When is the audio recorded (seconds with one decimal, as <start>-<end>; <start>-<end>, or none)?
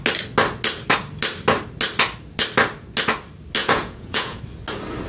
0.0-3.6; 4.4-5.1